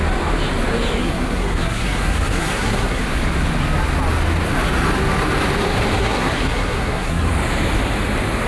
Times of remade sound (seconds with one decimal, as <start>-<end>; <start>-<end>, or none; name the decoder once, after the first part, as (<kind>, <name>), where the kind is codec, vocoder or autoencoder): 1.0-3.0 (codec, SNAC); 6.0-7.3